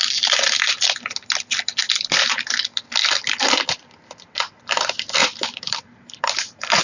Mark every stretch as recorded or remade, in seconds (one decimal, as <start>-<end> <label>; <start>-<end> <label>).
0.0-5.2 recorded; 5.2-6.8 remade